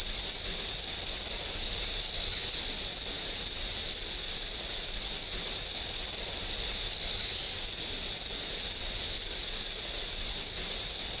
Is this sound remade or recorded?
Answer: recorded